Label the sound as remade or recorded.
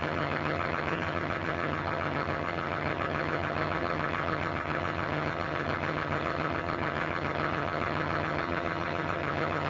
remade